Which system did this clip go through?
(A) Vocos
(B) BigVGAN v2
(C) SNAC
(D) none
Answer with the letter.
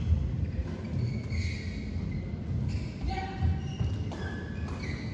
D